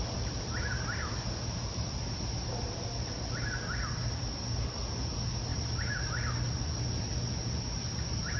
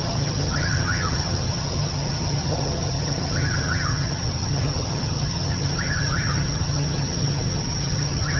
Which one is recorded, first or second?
first